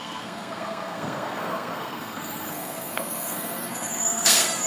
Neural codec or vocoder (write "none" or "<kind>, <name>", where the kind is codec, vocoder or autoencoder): codec, SNAC